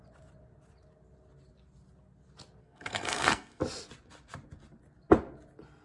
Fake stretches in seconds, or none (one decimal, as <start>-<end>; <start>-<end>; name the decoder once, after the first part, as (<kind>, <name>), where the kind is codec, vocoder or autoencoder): 2.6-3.6 (codec, SNAC)